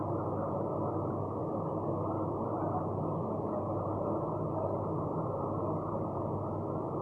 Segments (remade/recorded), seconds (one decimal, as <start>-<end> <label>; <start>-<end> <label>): 0.0-7.0 recorded